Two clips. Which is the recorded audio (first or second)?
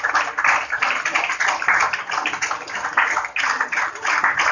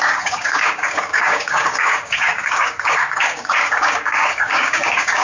first